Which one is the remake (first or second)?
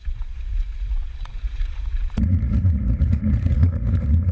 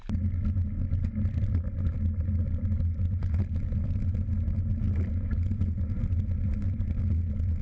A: first